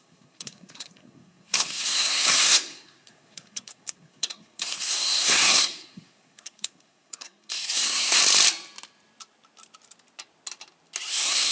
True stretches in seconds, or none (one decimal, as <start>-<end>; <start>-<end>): 8.2-11.1